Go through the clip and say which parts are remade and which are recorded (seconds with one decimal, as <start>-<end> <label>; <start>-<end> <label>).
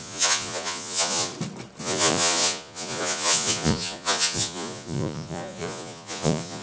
0.0-1.3 remade; 1.3-1.8 recorded; 1.8-6.6 remade